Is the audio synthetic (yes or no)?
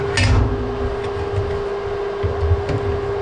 no